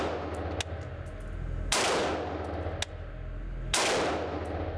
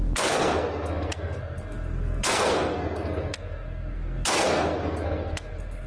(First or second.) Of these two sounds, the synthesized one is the second